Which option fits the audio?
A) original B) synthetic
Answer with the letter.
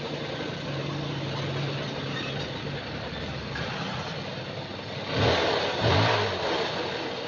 A